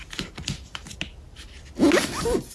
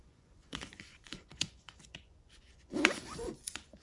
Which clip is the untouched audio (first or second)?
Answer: first